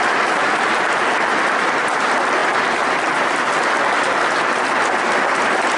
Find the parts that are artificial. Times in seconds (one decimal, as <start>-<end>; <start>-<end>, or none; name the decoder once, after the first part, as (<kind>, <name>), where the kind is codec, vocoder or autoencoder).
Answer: none